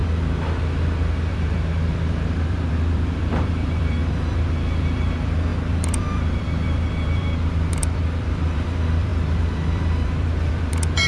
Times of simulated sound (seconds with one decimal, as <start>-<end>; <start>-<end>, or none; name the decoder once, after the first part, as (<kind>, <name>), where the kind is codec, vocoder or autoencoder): 1.3-11.1 (vocoder, BigVGAN v2)